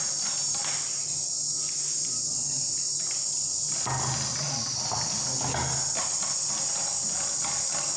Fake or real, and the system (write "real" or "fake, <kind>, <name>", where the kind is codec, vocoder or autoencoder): real